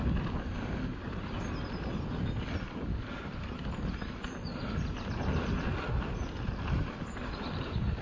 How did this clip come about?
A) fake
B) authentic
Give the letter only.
B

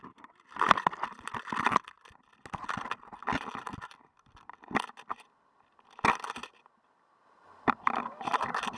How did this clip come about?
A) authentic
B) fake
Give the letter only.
A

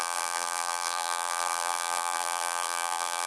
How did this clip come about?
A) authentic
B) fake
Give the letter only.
B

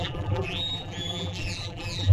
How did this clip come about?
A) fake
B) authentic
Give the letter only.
A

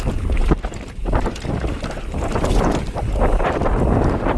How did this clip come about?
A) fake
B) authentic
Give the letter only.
A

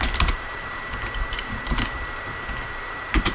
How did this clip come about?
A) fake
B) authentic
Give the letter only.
A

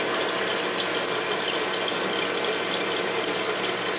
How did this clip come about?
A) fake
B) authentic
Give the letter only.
B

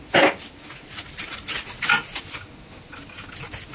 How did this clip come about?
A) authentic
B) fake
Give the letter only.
A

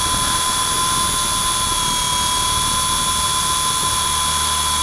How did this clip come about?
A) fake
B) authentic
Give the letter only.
B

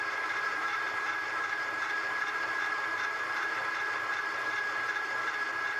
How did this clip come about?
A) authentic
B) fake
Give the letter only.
B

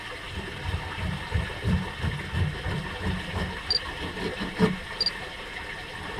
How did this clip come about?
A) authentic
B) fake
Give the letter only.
A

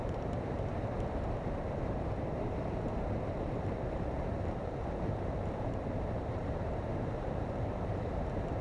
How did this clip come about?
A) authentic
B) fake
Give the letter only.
B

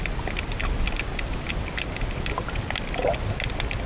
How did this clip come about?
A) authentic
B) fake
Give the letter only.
A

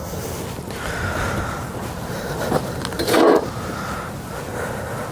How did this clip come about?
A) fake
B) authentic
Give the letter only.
B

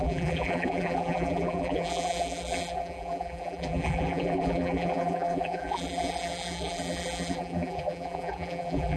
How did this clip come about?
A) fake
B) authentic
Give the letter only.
A